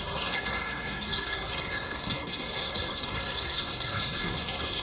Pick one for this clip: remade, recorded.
remade